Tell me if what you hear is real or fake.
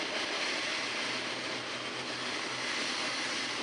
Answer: real